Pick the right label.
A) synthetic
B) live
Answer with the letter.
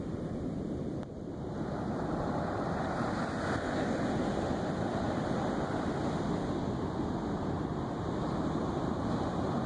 B